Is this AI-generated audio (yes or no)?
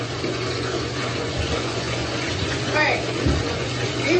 yes